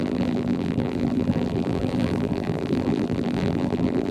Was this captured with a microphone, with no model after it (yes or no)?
no